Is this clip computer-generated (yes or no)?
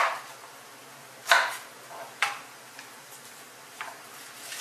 yes